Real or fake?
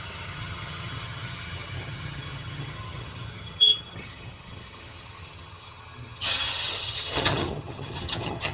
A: fake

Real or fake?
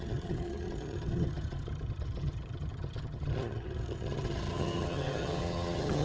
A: fake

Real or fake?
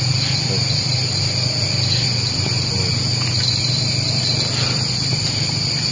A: real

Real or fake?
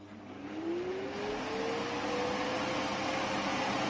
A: real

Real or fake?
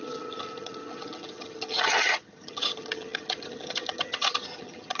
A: fake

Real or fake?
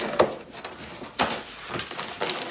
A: real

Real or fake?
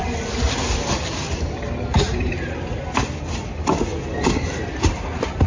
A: real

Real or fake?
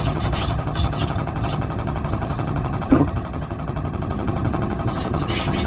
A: fake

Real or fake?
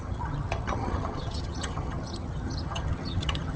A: fake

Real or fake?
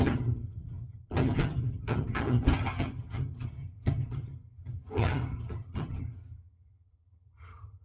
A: fake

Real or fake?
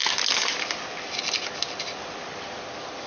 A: real